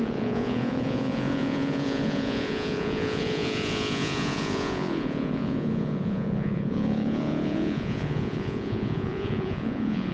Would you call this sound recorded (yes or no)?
no